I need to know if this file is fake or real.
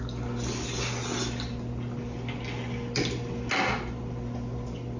real